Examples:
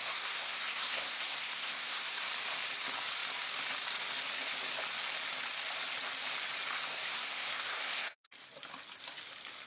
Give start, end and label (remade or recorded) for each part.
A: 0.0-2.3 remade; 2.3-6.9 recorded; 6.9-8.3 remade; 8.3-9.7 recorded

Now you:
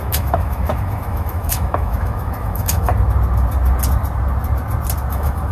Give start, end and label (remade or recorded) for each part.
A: 0.0-2.9 remade; 2.9-5.1 recorded; 5.1-5.5 remade

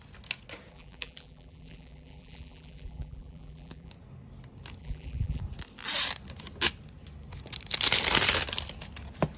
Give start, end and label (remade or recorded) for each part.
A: 0.0-0.7 recorded; 0.7-3.9 remade; 3.9-4.8 recorded; 4.8-5.4 remade; 5.4-9.4 recorded

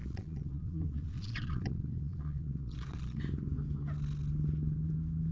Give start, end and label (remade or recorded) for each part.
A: 0.0-3.2 remade; 3.2-5.3 recorded

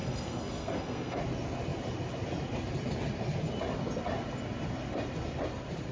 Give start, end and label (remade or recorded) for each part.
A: 0.0-1.2 remade; 1.2-5.9 recorded